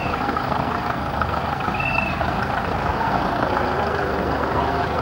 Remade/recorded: remade